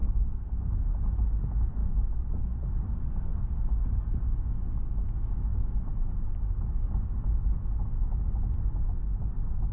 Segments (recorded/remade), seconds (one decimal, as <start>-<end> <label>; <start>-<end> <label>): 0.0-0.6 remade; 0.6-1.8 recorded; 1.8-2.6 remade; 2.6-9.7 recorded